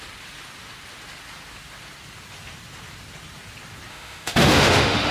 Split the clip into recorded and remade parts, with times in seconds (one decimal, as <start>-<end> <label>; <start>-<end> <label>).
0.0-3.9 recorded; 3.9-5.1 remade